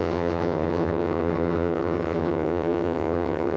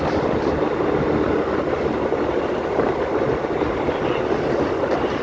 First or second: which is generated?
first